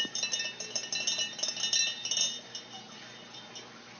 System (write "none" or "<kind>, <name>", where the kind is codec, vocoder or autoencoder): none